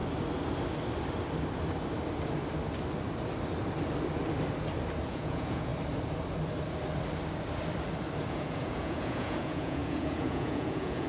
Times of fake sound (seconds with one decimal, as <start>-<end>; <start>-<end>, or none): 5.1-5.7; 8.3-11.1